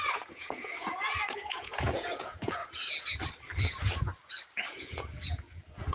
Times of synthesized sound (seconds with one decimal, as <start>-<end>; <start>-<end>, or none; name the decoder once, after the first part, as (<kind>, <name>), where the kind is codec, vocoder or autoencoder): 0.0-2.6 (vocoder, Vocos); 3.6-4.1; 4.7-5.9